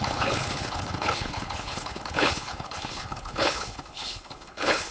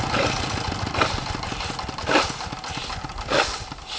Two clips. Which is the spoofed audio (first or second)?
first